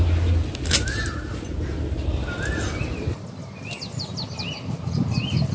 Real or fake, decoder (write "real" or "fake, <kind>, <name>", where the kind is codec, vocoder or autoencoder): real